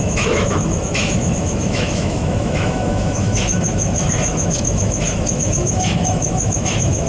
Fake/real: fake